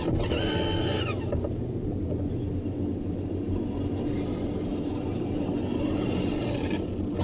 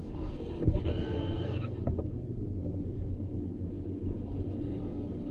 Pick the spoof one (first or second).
second